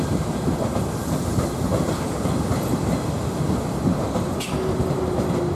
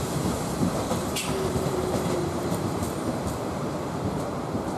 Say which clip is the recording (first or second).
first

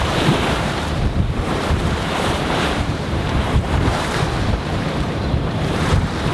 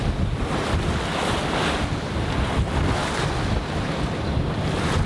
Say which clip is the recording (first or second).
second